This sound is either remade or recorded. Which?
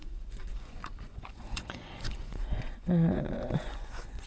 remade